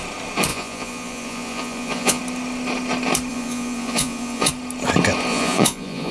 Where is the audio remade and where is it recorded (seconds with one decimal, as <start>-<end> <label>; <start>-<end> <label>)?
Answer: 0.0-0.5 recorded; 0.5-2.2 remade; 2.2-3.3 recorded; 3.3-4.5 remade; 4.5-5.3 recorded; 5.3-6.1 remade